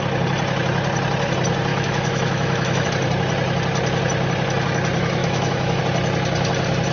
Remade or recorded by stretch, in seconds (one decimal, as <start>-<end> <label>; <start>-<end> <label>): 0.0-1.7 recorded; 1.7-2.9 remade; 2.9-5.2 recorded; 5.2-5.8 remade; 5.8-6.9 recorded